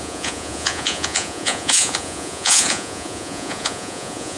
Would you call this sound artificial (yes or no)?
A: yes